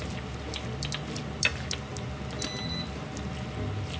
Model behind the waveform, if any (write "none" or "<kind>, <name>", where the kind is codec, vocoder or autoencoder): none